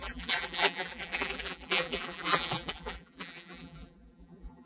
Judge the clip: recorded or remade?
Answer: remade